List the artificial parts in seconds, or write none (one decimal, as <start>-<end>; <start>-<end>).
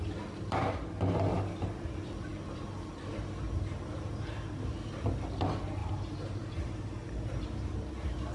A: 5.8-7.2